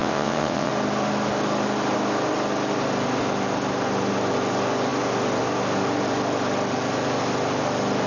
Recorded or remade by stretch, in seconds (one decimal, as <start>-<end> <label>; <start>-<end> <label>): 0.0-0.7 remade; 0.7-8.1 recorded